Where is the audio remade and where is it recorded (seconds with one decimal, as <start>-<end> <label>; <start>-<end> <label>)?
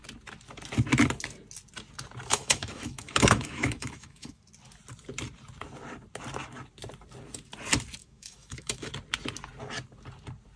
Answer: 0.0-2.3 recorded; 2.3-4.4 remade; 4.4-8.0 recorded; 8.0-8.9 remade; 8.9-10.6 recorded